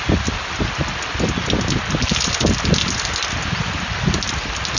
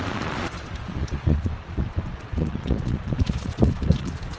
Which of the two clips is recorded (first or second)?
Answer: first